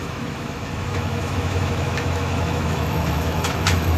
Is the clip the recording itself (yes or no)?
no